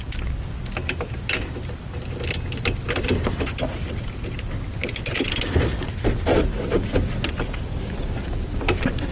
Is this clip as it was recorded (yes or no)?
yes